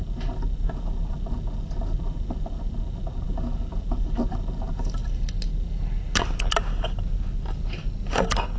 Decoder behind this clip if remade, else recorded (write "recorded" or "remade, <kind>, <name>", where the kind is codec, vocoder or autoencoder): recorded